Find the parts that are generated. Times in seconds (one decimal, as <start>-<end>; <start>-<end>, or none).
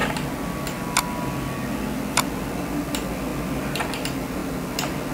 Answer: none